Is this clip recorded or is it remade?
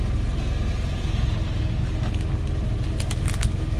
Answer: recorded